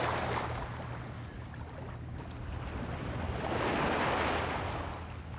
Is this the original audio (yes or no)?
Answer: yes